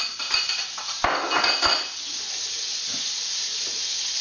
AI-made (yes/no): no